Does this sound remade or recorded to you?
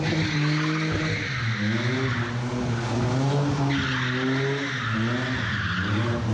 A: recorded